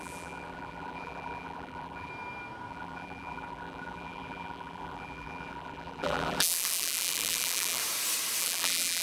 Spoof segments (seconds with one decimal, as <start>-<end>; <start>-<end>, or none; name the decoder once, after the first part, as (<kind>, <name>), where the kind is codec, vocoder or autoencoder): 0.0-2.1 (vocoder, BigVGAN v2); 2.7-7.8; 8.4-9.0